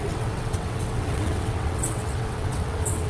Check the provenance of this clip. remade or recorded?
remade